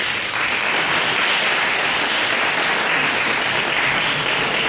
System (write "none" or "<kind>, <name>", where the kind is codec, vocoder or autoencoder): none